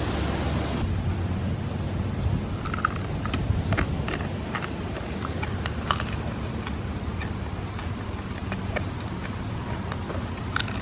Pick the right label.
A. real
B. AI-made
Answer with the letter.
A